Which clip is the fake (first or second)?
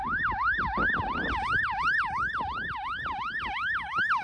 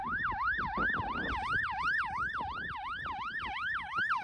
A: second